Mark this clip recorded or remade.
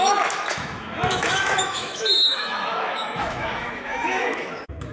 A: remade